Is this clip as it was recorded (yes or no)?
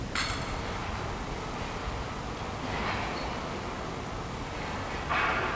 yes